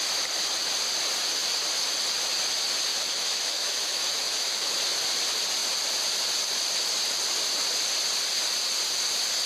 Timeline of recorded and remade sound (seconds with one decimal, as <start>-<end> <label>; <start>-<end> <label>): 0.0-2.9 recorded; 2.9-4.7 remade; 4.7-9.5 recorded